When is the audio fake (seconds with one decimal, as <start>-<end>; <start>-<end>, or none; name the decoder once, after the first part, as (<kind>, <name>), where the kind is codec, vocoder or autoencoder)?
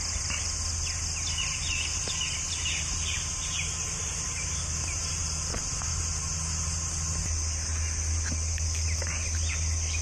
none